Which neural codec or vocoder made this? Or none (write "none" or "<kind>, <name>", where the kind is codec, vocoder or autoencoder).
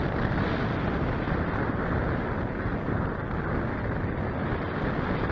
none